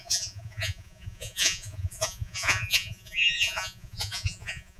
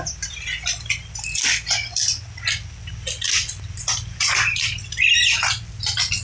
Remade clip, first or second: first